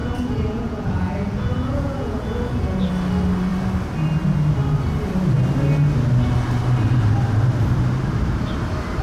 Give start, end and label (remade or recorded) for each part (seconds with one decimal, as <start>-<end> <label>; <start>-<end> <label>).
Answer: 0.0-2.9 remade; 2.9-9.0 recorded